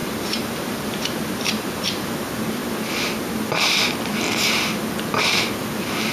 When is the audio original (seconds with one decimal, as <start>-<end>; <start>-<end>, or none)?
2.1-6.1